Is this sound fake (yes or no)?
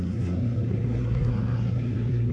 yes